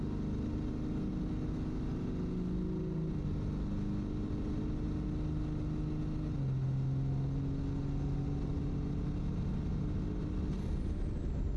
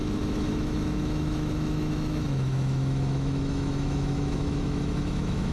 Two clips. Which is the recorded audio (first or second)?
first